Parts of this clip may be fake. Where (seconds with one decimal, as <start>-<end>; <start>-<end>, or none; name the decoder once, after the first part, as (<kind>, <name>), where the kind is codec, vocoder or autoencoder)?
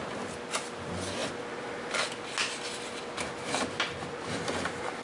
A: none